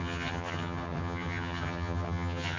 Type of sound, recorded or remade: remade